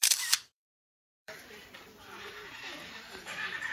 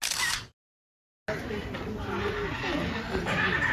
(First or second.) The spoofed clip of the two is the first